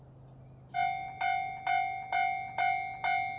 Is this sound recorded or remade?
recorded